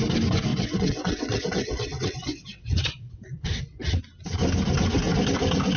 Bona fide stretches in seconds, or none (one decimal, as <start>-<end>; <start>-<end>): 0.0-0.5; 4.0-5.8